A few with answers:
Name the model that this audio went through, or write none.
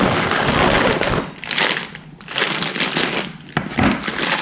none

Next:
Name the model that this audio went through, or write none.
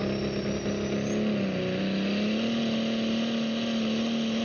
none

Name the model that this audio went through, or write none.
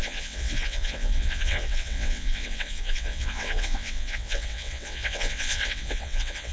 vocoder, WaveNeXt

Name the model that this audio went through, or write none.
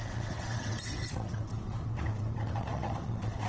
vocoder, WaveNeXt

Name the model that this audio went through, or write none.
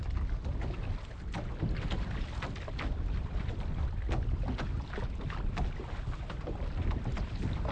none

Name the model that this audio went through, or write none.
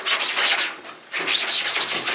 none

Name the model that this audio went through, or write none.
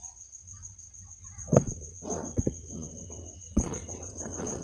vocoder, WaveNeXt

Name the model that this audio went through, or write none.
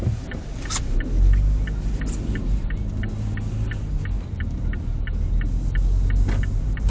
none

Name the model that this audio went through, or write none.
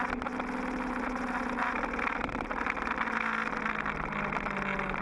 none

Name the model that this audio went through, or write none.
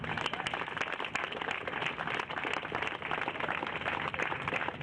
none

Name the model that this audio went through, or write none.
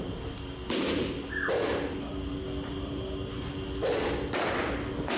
none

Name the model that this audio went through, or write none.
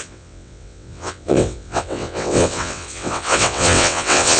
vocoder, WaveNeXt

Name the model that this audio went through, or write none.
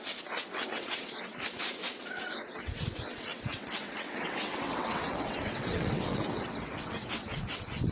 vocoder, WaveNeXt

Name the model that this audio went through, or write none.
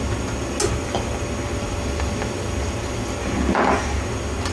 none